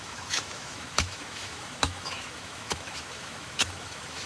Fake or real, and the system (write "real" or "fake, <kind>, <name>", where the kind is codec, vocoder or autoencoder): fake, autoencoder, DAC-VAE